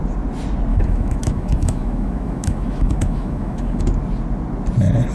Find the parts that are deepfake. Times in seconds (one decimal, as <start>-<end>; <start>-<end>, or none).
0.7-3.8